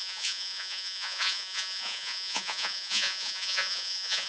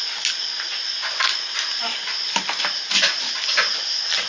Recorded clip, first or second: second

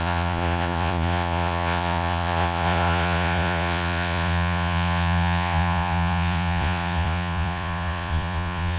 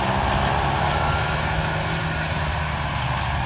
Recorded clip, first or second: second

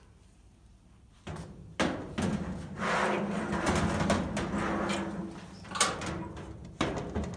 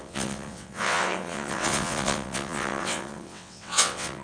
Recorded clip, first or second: first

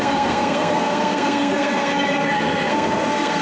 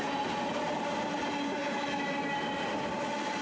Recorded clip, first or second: second